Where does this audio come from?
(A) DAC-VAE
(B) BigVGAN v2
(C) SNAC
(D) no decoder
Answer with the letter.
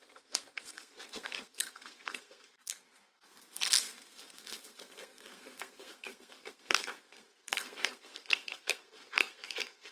C